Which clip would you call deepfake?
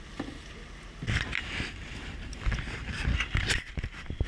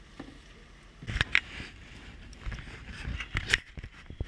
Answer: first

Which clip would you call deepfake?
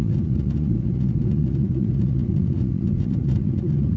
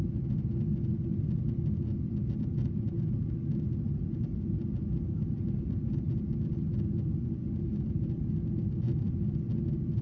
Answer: first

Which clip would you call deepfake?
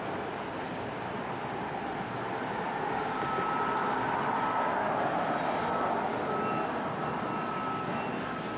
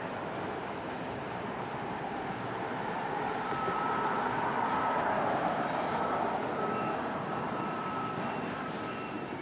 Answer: second